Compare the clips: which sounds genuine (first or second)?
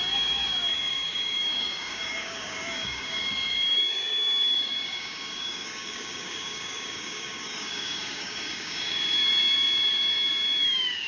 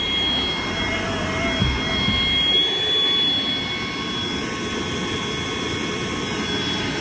second